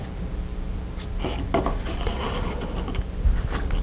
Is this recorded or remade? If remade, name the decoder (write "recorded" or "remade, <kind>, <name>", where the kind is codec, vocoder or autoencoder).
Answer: recorded